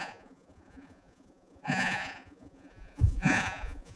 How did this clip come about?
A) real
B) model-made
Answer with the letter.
B